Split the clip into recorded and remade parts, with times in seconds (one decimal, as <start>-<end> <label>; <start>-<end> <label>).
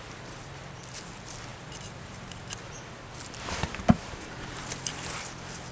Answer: 0.0-1.5 recorded; 1.5-4.9 remade; 4.9-5.7 recorded